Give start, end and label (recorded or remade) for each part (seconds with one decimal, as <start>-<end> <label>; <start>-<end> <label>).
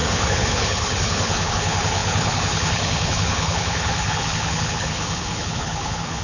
0.0-6.2 remade